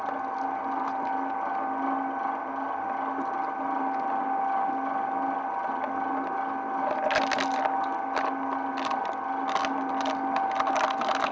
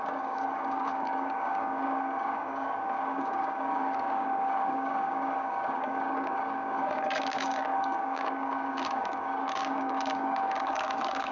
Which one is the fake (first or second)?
second